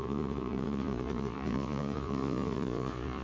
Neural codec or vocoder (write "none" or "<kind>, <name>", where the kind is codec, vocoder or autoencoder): vocoder, Vocos